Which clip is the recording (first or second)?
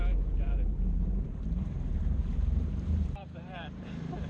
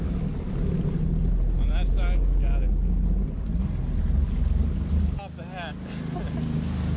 second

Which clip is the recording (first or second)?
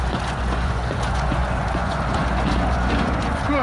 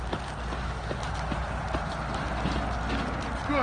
second